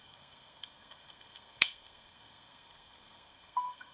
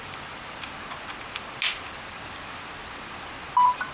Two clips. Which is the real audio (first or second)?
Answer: second